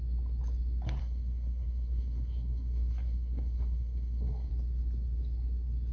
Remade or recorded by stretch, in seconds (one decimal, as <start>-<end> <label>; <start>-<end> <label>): 0.0-1.0 recorded; 1.0-4.5 remade; 4.5-5.9 recorded